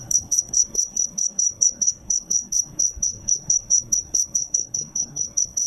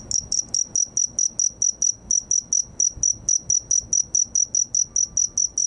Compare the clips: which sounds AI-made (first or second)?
first